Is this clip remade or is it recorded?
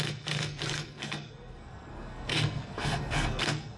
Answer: remade